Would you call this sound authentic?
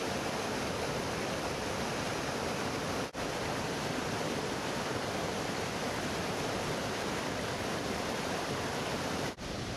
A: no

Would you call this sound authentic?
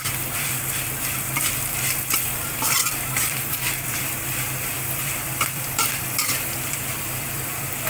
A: no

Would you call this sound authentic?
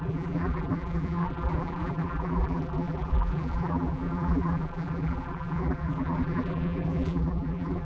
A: no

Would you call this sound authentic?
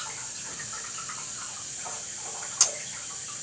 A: yes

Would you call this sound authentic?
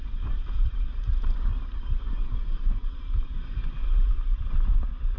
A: no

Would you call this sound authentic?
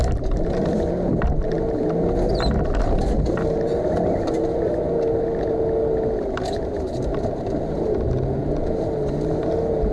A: yes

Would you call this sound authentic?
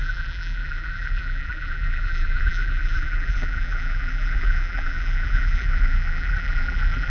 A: no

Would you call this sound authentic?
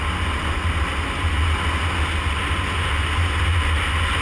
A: yes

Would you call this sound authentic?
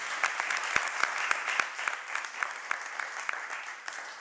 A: yes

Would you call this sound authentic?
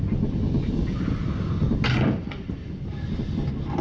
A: yes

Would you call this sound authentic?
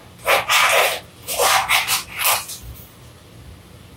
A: yes